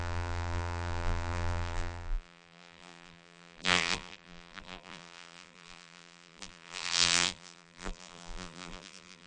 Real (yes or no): no